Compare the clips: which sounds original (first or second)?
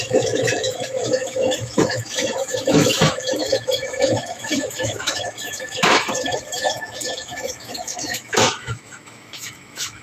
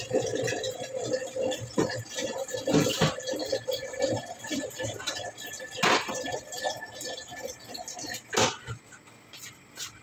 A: second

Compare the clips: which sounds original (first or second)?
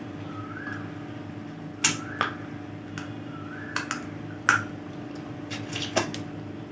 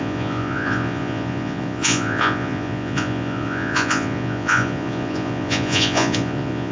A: first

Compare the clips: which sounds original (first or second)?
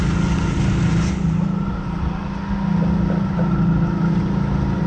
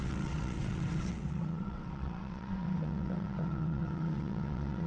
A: first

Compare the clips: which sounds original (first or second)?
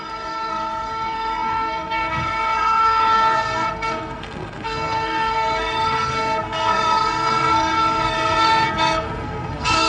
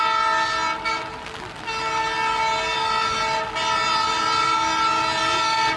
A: second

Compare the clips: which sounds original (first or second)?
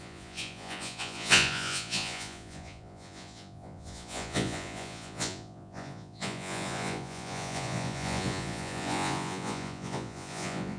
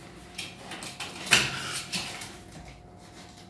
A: second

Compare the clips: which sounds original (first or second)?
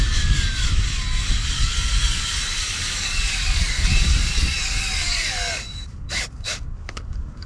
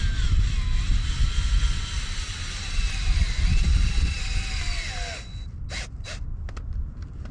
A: second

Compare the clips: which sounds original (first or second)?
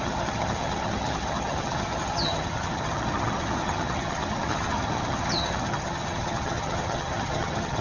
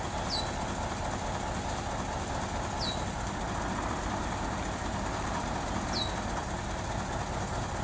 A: second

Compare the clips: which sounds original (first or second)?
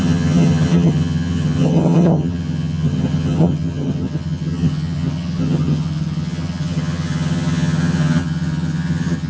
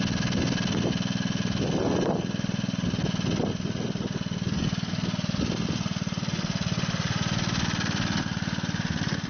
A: second